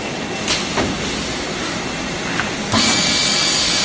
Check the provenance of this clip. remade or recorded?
recorded